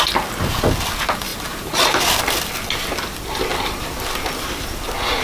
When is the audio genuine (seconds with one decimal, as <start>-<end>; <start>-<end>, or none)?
0.0-1.3; 2.0-5.2